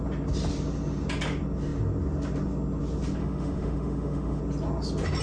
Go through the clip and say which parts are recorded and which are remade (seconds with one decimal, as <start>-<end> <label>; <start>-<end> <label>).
0.0-3.2 recorded; 3.2-4.4 remade; 4.4-5.2 recorded

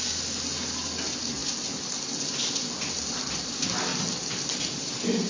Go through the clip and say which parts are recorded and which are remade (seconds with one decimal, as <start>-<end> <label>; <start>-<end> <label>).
0.0-5.3 recorded

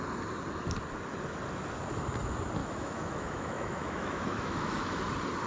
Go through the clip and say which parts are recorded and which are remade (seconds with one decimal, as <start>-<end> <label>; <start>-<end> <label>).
0.0-2.6 recorded; 2.6-5.0 remade; 5.0-5.5 recorded

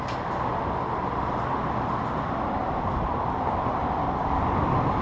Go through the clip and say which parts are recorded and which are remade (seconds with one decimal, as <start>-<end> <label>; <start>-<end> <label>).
0.0-5.0 recorded

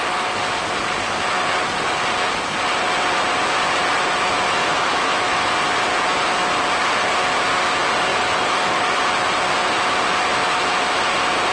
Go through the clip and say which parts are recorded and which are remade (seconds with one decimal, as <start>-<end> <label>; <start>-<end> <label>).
0.0-4.6 recorded; 4.6-5.5 remade; 5.5-8.1 recorded; 8.1-9.0 remade; 9.0-11.5 recorded

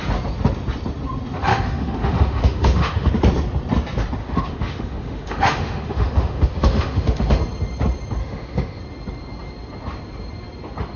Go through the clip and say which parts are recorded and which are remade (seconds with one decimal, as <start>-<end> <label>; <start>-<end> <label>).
0.0-1.5 recorded; 1.5-3.1 remade; 3.1-4.2 recorded; 4.2-7.4 remade; 7.4-8.2 recorded; 8.2-8.8 remade; 8.8-11.0 recorded

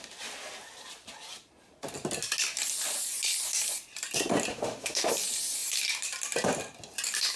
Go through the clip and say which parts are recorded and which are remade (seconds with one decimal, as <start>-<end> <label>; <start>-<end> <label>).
0.0-4.5 recorded; 4.5-5.1 remade; 5.1-7.4 recorded

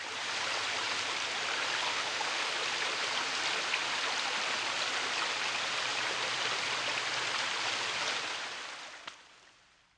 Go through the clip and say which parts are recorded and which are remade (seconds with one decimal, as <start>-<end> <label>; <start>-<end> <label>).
0.0-1.9 recorded; 1.9-2.5 remade; 2.5-10.0 recorded